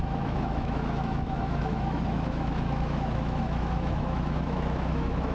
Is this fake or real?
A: fake